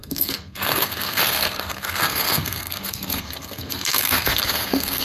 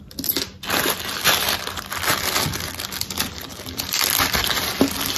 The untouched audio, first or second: second